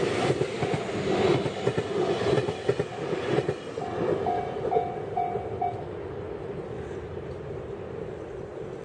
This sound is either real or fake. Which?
real